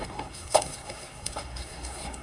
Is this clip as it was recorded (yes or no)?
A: no